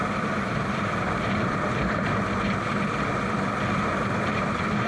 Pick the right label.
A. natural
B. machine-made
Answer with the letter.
B